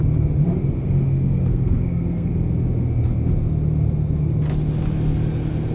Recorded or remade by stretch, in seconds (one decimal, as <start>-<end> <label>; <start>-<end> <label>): 0.0-0.8 recorded; 0.8-2.3 remade; 2.3-5.7 recorded